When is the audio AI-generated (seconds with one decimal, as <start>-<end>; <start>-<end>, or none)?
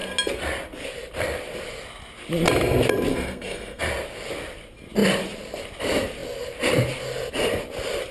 3.1-3.8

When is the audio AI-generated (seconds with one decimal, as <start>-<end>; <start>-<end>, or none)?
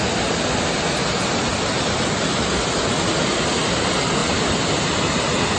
none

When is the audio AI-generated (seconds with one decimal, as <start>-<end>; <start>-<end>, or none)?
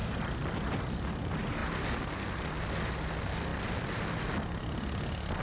none